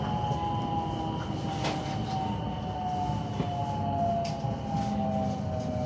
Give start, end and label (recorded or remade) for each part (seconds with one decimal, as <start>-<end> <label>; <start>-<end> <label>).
0.0-5.9 recorded